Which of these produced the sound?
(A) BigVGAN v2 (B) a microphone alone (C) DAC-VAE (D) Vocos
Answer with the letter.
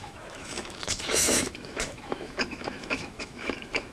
C